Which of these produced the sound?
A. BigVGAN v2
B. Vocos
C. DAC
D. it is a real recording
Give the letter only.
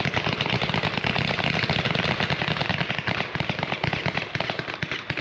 D